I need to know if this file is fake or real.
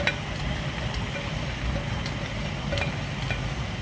real